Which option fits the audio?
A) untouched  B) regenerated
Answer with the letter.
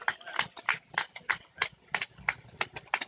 A